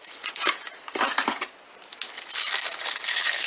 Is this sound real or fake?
real